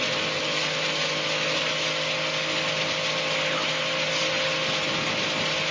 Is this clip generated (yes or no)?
no